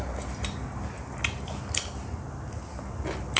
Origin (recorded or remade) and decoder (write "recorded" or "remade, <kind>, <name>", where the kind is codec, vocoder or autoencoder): recorded